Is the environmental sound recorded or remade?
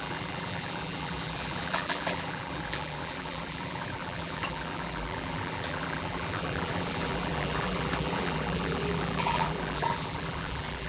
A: remade